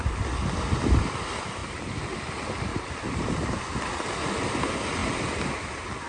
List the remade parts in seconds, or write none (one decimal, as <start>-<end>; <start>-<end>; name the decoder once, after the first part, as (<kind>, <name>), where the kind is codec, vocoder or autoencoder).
2.7-3.6 (vocoder, BigVGAN v2)